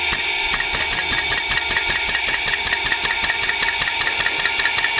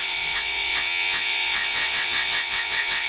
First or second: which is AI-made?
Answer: second